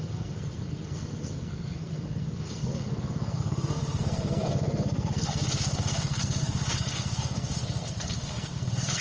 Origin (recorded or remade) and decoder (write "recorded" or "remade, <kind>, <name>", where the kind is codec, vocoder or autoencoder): remade, codec, SNAC